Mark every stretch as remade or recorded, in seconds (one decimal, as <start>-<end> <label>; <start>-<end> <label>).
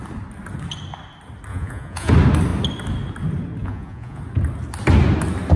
0.0-1.5 recorded; 1.5-2.1 remade; 2.1-3.6 recorded; 3.6-4.2 remade; 4.2-5.6 recorded